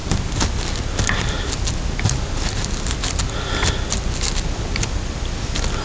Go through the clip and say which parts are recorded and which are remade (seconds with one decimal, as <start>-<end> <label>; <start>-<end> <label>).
0.0-5.8 recorded